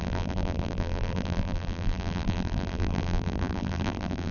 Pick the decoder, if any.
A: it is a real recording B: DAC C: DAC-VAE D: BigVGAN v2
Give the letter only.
D